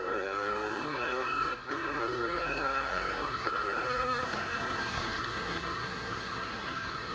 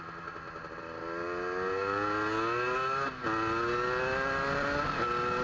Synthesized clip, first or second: first